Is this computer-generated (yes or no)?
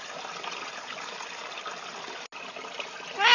no